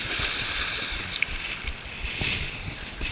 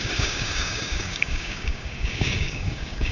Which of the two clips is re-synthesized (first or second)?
second